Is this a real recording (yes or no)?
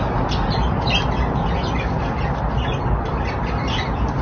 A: yes